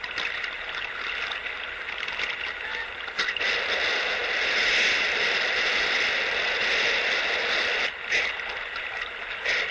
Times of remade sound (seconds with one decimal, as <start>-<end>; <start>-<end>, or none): none